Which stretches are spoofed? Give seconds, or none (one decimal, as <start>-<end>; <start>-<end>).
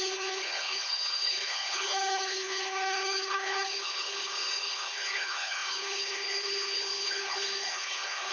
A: 0.0-8.3